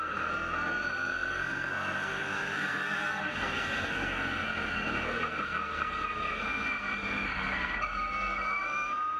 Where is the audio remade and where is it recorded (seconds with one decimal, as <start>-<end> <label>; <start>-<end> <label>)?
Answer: 0.0-9.2 remade